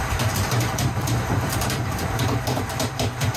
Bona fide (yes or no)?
no